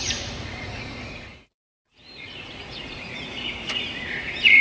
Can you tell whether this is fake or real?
fake